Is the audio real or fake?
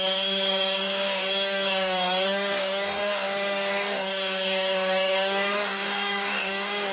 fake